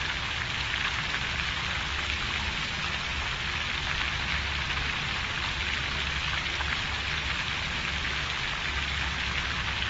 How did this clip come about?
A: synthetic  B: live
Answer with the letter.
B